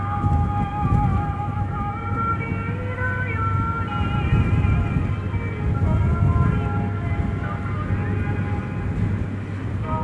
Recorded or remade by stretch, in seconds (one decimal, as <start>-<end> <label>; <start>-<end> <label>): 0.0-1.1 recorded; 1.1-1.9 remade; 1.9-10.0 recorded